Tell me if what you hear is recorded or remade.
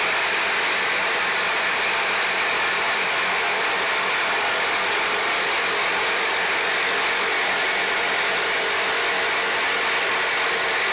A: recorded